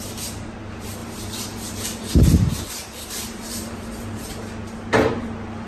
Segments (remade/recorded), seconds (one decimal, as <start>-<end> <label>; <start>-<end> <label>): 0.0-1.0 recorded; 1.0-4.4 remade; 4.4-5.7 recorded